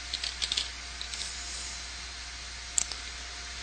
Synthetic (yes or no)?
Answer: no